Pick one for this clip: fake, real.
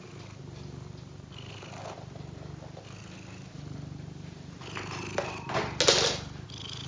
real